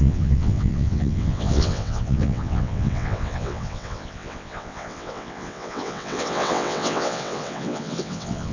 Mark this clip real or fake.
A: fake